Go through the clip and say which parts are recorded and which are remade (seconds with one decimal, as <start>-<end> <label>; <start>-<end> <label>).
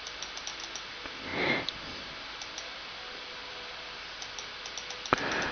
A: 0.0-5.5 recorded